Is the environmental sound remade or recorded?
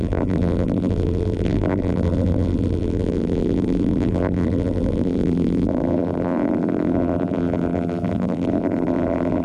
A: remade